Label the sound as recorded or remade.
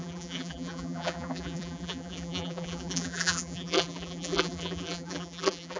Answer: remade